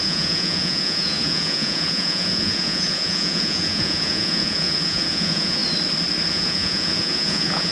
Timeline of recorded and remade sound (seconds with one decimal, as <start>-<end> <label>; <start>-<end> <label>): 0.0-5.6 remade; 5.6-6.3 recorded; 6.3-7.7 remade